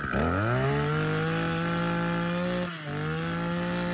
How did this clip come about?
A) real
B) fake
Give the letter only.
A